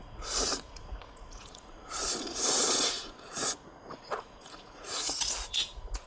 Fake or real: fake